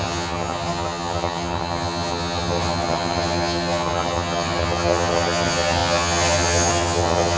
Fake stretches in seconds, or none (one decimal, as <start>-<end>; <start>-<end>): 0.0-7.4